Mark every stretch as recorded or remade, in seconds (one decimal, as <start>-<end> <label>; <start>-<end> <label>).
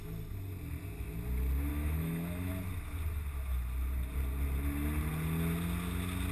0.0-1.7 recorded; 1.7-2.5 remade; 2.5-6.3 recorded